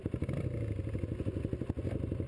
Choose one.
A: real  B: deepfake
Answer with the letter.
A